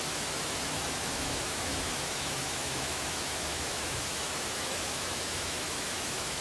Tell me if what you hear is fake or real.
fake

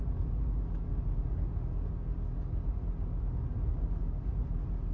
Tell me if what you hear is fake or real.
real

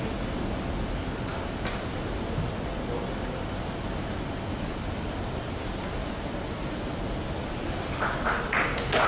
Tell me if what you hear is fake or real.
real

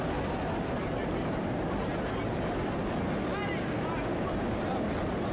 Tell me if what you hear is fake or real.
real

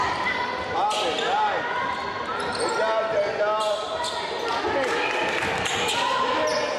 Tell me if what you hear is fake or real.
real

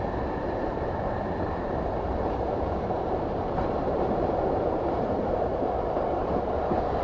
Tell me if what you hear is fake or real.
fake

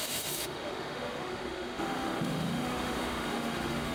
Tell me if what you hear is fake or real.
fake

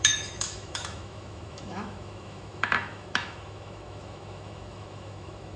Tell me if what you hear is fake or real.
fake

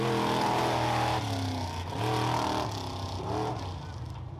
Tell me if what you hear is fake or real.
real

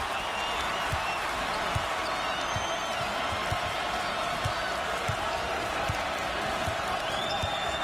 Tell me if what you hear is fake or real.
real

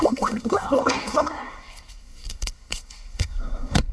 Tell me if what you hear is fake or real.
fake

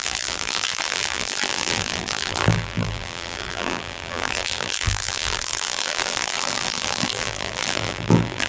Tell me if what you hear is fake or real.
fake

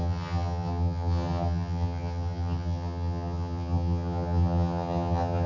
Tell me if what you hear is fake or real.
fake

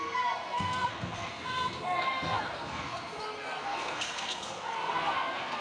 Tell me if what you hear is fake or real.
fake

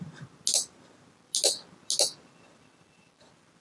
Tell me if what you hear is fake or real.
real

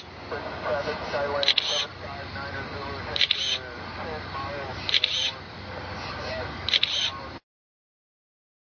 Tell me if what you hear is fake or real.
real